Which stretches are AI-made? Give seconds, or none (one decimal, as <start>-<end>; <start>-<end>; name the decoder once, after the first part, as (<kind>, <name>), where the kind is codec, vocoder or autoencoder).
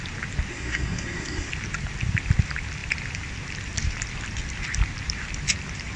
0.5-1.5 (codec, SNAC)